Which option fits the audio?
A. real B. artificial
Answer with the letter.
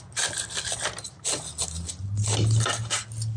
A